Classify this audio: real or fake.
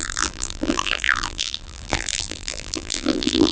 fake